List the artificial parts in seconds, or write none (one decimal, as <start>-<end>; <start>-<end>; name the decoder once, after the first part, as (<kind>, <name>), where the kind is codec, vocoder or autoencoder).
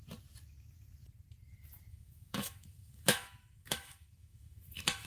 1.9-5.1 (autoencoder, DAC-VAE)